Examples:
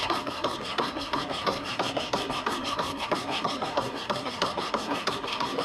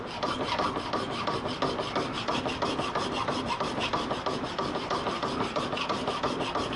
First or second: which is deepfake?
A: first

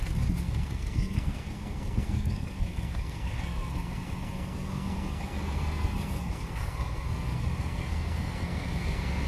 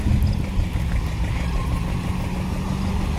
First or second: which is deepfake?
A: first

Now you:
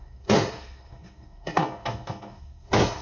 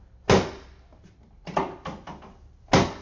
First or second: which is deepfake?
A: first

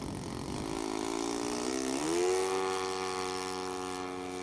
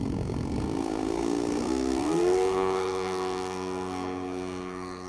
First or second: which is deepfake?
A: second